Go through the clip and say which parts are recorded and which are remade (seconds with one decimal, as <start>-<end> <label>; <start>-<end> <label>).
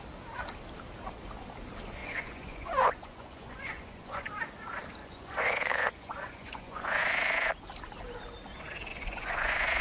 0.0-2.0 recorded; 2.0-4.3 remade; 4.3-5.0 recorded; 5.0-7.5 remade; 7.5-8.9 recorded; 8.9-9.8 remade